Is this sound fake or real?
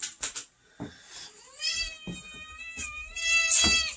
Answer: real